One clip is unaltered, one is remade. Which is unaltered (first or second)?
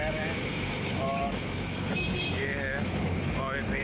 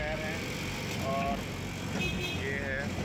second